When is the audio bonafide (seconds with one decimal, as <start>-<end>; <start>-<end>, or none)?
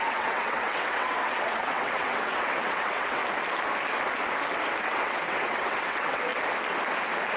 3.2-4.8; 6.3-7.4